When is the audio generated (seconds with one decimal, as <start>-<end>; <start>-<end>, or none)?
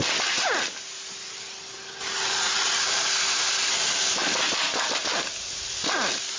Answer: none